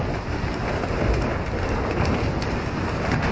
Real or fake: real